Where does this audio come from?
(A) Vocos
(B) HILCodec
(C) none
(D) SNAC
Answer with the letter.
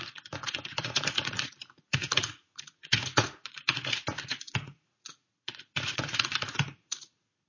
A